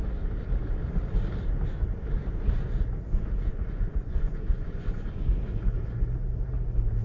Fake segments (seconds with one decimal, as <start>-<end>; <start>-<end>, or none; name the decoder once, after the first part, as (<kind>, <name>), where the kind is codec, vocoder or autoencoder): 3.5-5.3 (vocoder, Vocos)